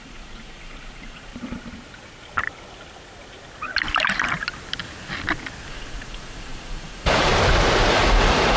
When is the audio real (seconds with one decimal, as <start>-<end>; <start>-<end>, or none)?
1.3-5.7; 7.3-7.9